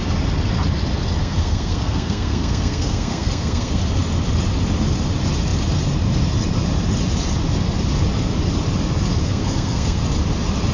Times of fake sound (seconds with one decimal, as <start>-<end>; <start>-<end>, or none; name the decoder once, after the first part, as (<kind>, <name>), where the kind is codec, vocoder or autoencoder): 1.2-3.8 (codec, SNAC); 9.2-10.0